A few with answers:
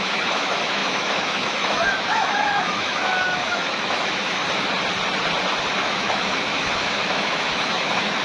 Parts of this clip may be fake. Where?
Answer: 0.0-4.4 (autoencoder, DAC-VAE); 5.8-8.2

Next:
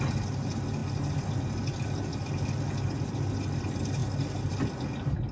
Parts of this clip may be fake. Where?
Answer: none

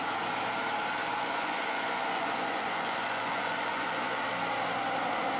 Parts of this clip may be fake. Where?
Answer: 1.0-4.2 (vocoder, Vocos)

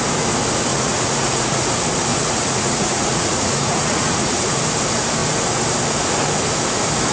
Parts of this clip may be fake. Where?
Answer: 0.7-1.7 (vocoder, Vocos); 2.1-4.6